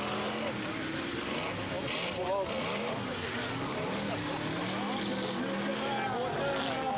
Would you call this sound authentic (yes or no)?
yes